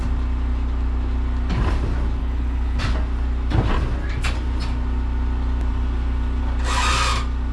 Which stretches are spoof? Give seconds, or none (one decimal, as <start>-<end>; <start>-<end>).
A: 2.2-2.8